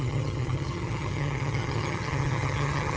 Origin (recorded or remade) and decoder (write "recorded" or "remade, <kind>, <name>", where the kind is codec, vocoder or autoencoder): remade, vocoder, HiFi-GAN